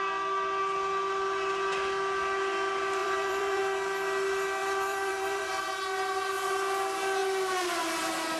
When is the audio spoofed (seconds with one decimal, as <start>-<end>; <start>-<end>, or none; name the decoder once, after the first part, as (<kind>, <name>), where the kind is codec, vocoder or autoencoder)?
3.0-3.6 (vocoder, BigVGAN v2); 4.6-5.4